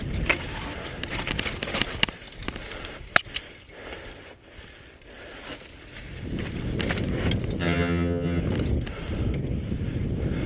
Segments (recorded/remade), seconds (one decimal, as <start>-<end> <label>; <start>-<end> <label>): 0.0-7.6 recorded; 7.6-8.4 remade; 8.4-10.5 recorded